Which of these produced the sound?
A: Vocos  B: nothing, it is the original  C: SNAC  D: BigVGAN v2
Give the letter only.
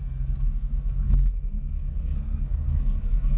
C